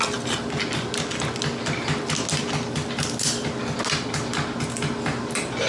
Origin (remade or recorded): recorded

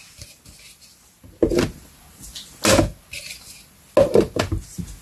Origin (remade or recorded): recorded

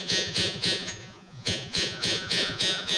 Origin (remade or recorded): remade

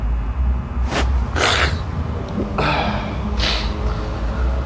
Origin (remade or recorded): recorded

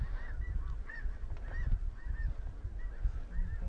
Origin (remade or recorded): recorded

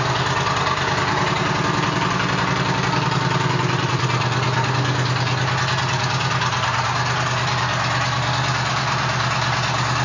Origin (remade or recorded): recorded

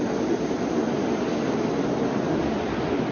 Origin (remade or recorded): recorded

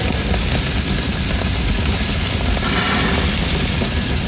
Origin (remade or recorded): recorded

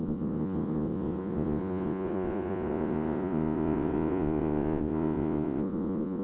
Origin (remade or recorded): remade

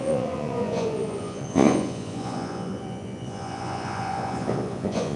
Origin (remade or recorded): remade